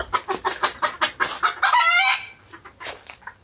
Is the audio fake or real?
real